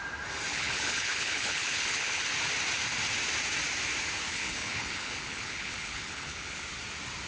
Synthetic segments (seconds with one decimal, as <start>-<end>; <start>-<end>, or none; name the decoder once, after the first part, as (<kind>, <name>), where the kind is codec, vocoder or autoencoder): 0.5-2.2 (codec, HILCodec); 4.3-6.6